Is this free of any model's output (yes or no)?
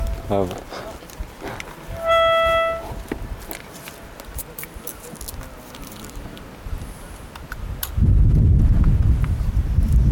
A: yes